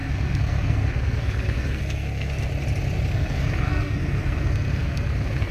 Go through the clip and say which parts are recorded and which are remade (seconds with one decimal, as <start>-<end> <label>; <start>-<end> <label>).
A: 0.0-2.5 remade; 2.5-3.1 recorded; 3.1-5.5 remade